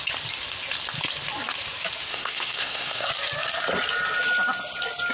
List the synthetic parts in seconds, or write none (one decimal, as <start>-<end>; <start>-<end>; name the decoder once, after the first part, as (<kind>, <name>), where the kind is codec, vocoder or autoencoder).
2.1-3.1 (codec, SNAC)